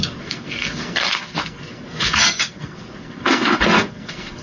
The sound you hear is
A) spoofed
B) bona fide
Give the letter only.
A